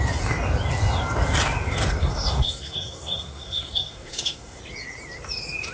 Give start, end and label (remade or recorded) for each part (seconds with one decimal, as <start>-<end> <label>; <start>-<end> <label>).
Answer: 0.0-2.0 recorded; 2.0-4.6 remade; 4.6-5.7 recorded